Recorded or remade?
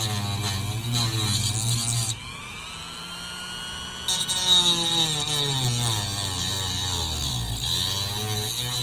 recorded